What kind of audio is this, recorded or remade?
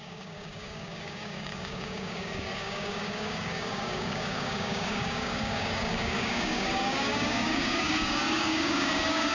remade